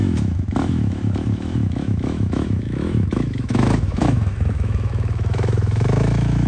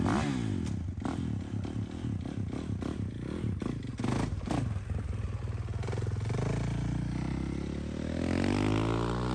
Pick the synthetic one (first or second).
first